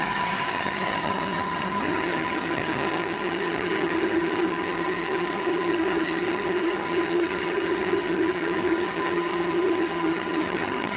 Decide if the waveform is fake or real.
fake